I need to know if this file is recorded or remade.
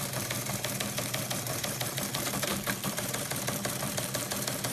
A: remade